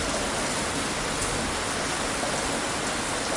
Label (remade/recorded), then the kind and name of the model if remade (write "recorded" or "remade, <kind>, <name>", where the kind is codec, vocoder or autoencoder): recorded